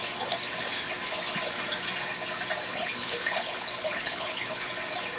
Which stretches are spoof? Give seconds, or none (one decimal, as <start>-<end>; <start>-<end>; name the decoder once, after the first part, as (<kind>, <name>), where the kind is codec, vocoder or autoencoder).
2.7-4.7 (codec, HILCodec)